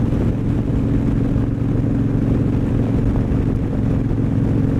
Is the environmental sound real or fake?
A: real